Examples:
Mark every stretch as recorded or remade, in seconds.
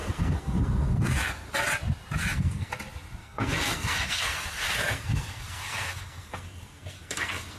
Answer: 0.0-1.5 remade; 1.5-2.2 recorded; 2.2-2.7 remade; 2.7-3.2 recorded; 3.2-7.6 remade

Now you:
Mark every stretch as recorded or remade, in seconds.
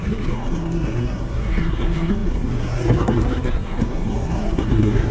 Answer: 0.0-5.1 remade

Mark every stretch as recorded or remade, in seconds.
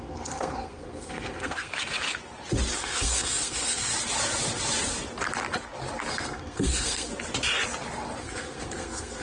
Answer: 0.0-1.7 remade; 1.7-2.8 recorded; 2.8-3.9 remade; 3.9-6.1 recorded; 6.1-7.1 remade; 7.1-8.2 recorded; 8.2-9.2 remade